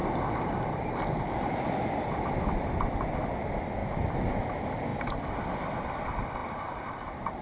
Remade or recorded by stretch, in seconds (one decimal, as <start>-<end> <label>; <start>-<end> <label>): 0.0-2.3 remade; 2.3-4.9 recorded; 4.9-5.7 remade; 5.7-7.4 recorded